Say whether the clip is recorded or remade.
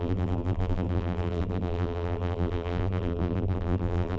remade